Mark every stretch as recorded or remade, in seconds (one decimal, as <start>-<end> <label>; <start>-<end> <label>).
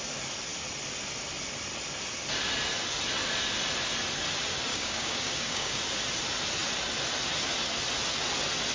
0.0-4.7 recorded; 4.7-5.8 remade; 5.8-8.7 recorded